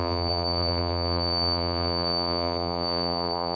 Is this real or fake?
fake